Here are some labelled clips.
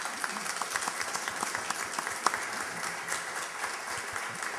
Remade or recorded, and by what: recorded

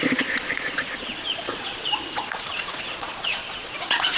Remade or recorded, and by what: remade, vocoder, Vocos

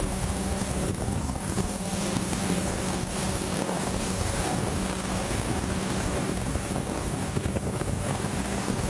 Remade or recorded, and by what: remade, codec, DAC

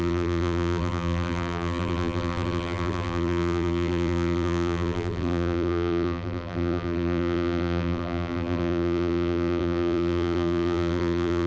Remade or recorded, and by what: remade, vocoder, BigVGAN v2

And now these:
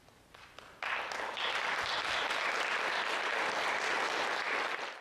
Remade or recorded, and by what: remade, vocoder, BigVGAN v2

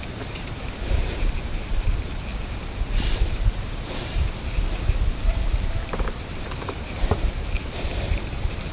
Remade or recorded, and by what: remade, vocoder, BigVGAN v2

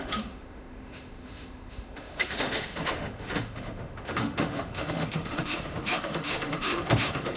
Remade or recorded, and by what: remade, autoencoder, DAC-VAE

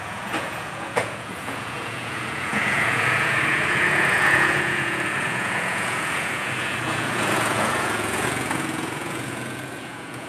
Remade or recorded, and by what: remade, vocoder, Vocos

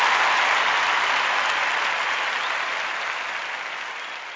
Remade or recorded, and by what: recorded